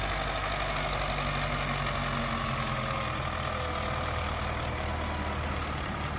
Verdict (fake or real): real